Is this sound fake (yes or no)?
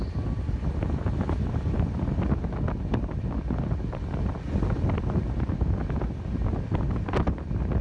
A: no